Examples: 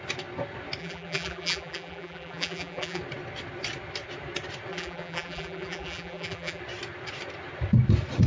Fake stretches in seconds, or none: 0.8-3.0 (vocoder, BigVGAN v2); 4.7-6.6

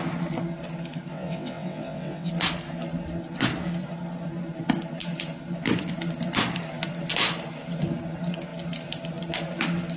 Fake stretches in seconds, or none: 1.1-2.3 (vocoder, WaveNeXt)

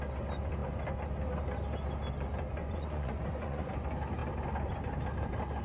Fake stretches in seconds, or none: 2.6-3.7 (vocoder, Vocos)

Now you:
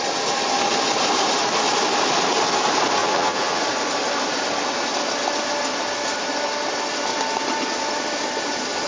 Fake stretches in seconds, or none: 3.0-3.6 (vocoder, Vocos)